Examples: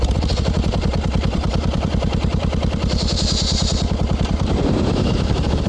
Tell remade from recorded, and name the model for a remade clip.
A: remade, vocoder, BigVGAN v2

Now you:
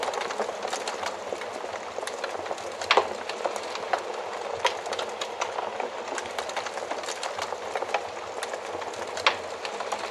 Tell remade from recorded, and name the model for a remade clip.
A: recorded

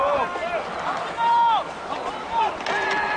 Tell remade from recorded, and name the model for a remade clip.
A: recorded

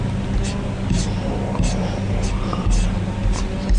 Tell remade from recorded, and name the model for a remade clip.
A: recorded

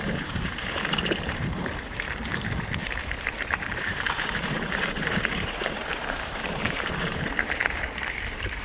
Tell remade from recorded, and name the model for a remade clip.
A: remade, vocoder, BigVGAN v2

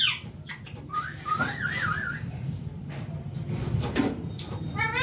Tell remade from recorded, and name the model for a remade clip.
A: remade, vocoder, BigVGAN v2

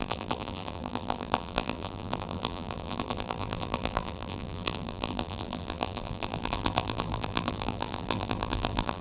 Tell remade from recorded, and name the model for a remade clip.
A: remade, vocoder, BigVGAN v2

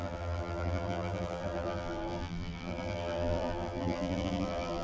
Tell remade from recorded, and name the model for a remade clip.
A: remade, vocoder, BigVGAN v2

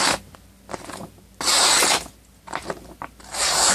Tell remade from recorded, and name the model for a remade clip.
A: recorded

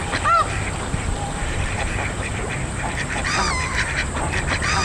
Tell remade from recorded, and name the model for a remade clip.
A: remade, vocoder, BigVGAN v2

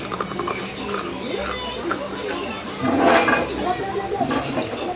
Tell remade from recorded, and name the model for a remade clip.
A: recorded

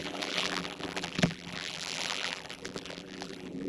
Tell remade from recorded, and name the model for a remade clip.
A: remade, vocoder, BigVGAN v2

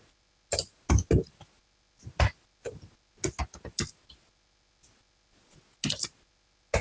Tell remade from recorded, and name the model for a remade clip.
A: recorded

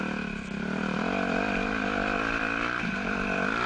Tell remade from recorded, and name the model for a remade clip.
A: remade, vocoder, BigVGAN v2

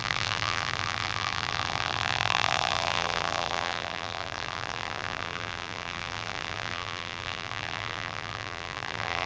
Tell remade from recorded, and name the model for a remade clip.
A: remade, vocoder, BigVGAN v2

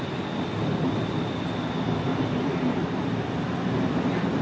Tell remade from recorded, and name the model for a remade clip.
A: remade, vocoder, BigVGAN v2